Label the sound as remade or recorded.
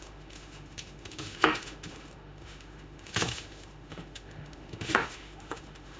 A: remade